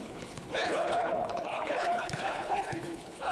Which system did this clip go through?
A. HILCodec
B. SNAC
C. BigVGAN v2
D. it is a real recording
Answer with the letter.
A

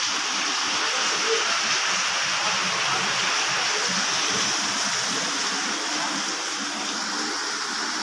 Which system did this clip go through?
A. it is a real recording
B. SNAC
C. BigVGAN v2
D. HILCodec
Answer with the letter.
A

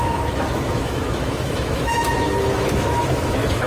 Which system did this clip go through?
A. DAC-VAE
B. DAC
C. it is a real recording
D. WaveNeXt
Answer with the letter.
A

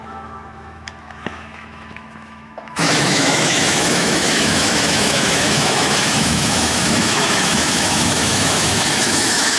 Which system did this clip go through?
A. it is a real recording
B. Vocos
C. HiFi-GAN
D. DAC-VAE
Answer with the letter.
D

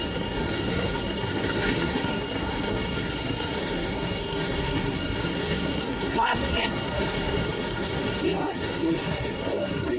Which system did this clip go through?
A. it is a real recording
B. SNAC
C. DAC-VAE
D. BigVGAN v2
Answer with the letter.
B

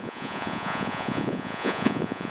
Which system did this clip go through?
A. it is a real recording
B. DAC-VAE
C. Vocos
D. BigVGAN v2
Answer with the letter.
C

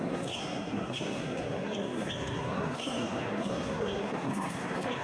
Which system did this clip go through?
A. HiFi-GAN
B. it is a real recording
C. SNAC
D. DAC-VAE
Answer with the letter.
C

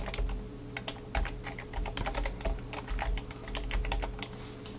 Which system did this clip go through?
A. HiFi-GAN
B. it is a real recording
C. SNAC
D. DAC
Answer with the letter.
B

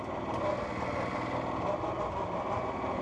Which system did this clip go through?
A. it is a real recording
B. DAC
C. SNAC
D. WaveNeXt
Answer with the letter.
A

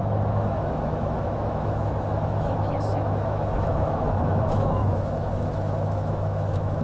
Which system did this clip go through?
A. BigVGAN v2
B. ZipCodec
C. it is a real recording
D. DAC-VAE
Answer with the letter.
D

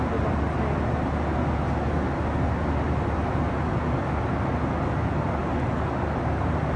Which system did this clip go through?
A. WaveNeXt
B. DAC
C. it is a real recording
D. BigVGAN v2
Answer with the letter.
C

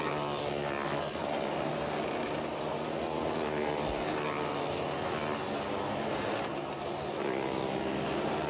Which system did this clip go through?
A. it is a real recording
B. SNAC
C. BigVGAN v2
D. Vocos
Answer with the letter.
A